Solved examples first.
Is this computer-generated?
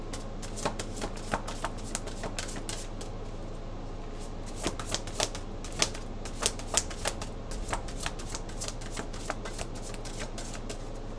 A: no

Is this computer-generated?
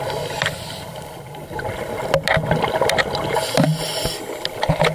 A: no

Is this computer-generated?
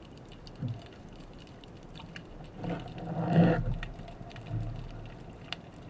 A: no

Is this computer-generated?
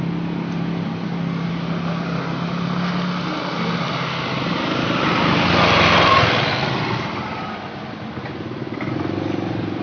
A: no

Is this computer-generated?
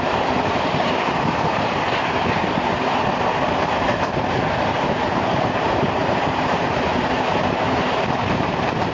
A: yes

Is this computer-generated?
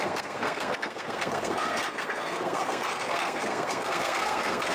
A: yes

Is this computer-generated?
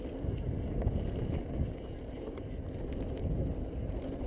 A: no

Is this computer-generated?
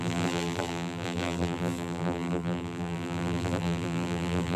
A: yes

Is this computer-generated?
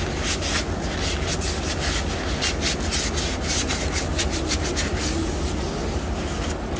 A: no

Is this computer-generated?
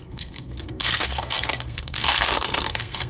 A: yes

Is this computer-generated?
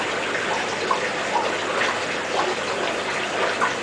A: no